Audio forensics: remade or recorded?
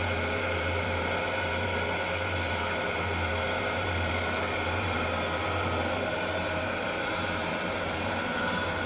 remade